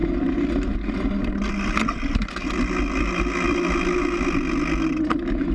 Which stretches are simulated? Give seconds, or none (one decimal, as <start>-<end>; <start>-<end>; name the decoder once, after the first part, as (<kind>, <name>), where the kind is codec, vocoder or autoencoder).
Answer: none